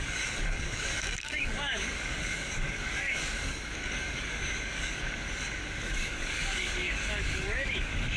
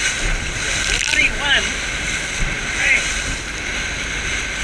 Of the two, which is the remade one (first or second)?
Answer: first